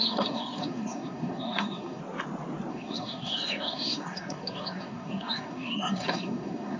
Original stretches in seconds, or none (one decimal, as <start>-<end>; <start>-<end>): 2.0-2.7